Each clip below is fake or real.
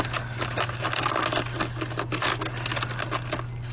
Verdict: real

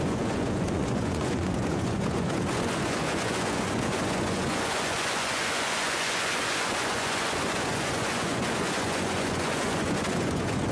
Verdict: fake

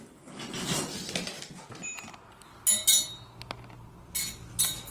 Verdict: real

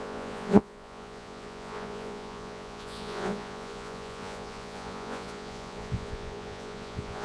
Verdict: fake